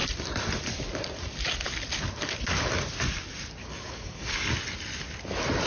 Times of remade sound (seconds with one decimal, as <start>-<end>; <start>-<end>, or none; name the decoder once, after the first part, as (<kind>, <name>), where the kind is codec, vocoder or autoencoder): 3.6-4.5 (codec, DAC)